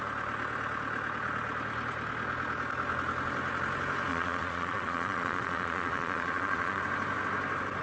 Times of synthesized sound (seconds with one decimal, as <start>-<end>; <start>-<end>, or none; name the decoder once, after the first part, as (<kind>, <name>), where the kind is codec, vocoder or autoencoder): 4.1-6.8 (vocoder, Vocos)